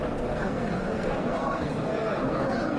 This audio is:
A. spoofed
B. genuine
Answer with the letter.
A